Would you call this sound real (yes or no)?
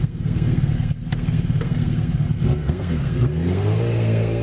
no